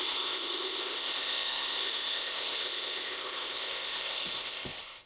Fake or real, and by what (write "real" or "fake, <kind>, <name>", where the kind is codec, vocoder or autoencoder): fake, codec, ZipCodec